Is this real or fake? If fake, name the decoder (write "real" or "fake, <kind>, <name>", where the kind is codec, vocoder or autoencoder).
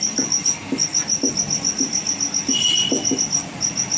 real